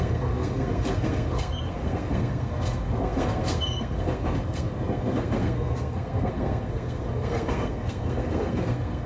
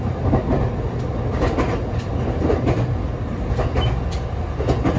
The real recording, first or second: second